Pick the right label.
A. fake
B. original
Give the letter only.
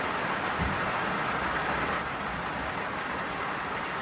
B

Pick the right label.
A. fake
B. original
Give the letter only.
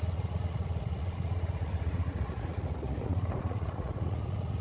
A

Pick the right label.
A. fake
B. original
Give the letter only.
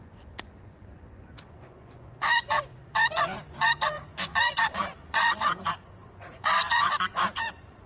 A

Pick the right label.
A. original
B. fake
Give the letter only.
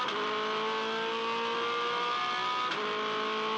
A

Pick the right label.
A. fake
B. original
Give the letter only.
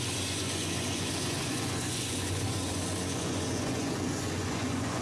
A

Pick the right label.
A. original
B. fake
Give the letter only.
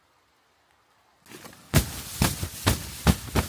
A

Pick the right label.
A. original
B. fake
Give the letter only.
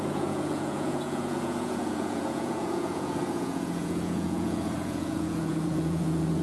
B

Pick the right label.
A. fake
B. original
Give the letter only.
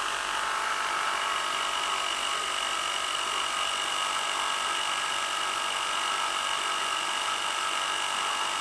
B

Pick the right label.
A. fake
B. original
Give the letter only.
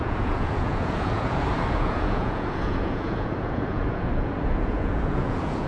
A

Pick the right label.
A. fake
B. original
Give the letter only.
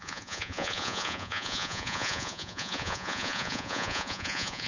A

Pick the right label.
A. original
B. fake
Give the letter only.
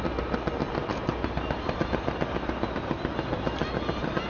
A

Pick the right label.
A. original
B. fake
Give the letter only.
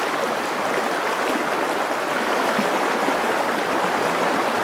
A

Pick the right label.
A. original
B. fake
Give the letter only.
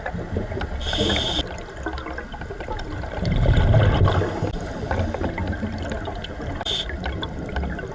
A